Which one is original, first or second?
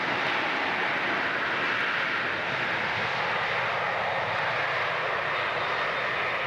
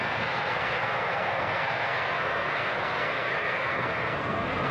first